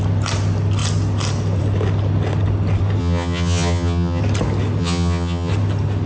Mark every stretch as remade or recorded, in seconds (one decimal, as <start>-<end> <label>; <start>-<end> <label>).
0.0-3.0 recorded; 3.0-4.2 remade; 4.2-4.8 recorded; 4.8-5.5 remade; 5.5-6.1 recorded